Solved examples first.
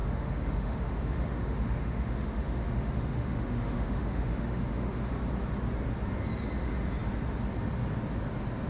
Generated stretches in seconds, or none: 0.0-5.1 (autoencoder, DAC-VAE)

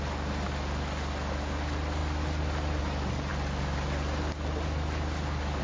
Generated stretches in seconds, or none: none

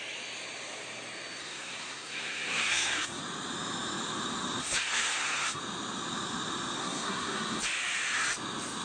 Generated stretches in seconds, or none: 1.4-3.2 (codec, SNAC); 4.6-5.6; 6.8-7.6